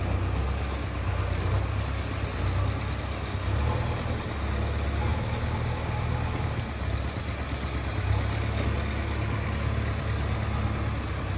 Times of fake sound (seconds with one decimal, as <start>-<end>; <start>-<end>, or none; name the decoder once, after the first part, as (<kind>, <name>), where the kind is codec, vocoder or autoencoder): 5.1-6.5 (codec, DAC)